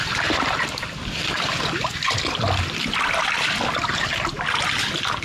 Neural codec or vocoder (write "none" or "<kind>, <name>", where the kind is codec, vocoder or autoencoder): none